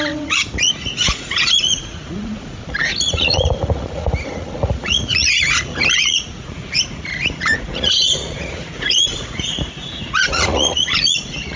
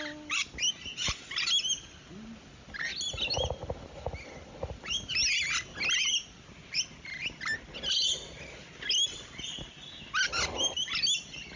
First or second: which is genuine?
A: second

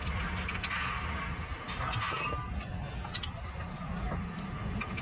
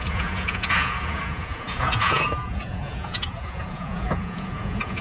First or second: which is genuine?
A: first